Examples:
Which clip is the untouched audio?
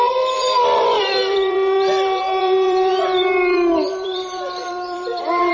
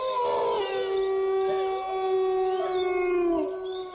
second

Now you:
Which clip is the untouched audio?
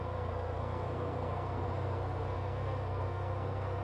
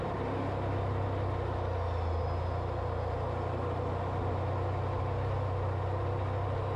second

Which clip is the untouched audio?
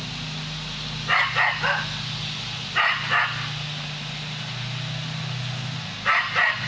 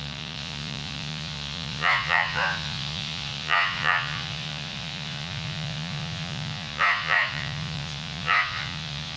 first